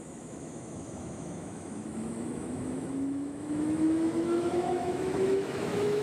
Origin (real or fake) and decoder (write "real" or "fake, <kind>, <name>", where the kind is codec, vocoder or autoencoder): fake, autoencoder, DAC-VAE